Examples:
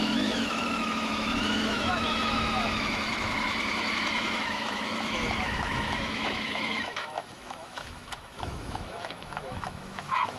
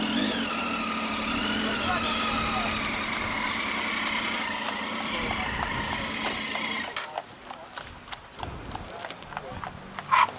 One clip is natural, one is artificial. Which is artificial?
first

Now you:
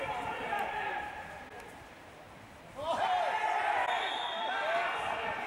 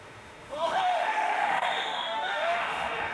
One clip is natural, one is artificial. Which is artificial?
second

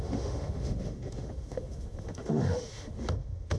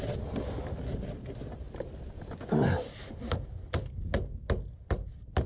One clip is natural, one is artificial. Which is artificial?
first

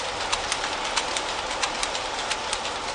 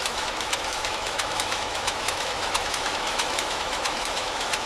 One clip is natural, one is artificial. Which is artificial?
second